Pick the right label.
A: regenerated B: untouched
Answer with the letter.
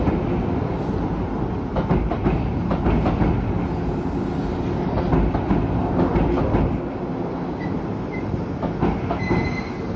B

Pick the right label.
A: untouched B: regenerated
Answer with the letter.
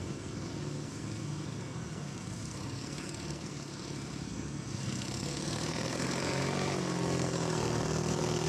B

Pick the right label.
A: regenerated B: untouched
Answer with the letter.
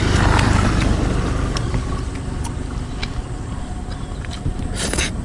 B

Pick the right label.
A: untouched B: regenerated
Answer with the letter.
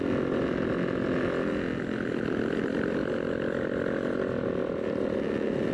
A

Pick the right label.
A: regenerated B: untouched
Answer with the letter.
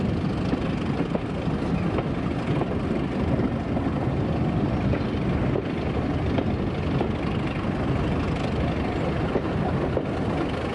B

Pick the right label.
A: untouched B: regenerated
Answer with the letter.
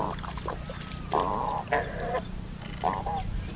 A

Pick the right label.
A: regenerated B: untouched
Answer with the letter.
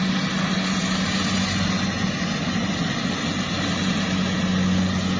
B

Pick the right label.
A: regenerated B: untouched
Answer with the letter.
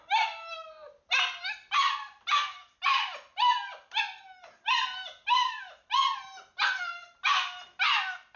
B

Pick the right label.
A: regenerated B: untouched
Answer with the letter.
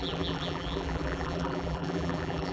A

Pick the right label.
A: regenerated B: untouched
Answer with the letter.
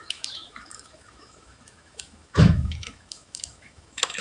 A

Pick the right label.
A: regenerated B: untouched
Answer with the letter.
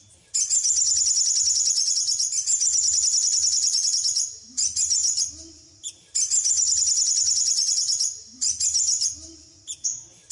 B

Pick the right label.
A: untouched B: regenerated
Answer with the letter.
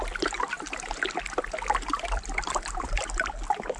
A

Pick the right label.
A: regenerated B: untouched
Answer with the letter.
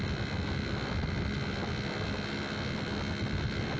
B